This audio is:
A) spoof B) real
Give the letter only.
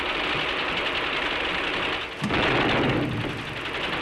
B